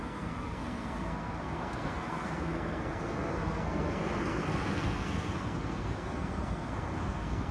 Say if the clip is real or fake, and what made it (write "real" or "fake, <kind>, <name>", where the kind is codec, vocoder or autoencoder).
fake, codec, SNAC